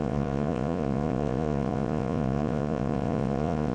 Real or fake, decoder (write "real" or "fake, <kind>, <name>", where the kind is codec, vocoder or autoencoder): fake, vocoder, Vocos